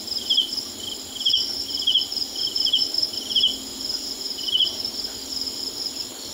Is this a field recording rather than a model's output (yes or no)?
yes